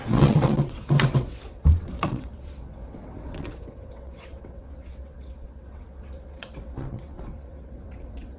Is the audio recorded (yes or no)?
no